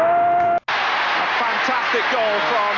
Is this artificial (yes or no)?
no